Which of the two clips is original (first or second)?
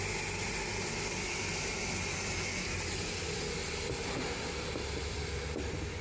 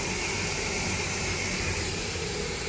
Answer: first